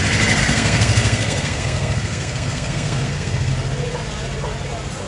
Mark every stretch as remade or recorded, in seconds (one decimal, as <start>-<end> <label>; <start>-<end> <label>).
0.0-0.4 recorded; 0.4-3.5 remade; 3.5-5.1 recorded